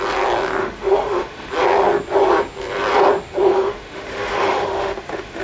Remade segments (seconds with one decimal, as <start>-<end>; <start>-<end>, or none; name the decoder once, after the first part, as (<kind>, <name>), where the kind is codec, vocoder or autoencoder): 0.6-1.5 (autoencoder, DAC-VAE); 3.5-5.4